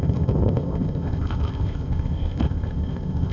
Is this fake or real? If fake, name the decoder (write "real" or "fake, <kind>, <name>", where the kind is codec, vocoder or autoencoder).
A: fake, codec, ZipCodec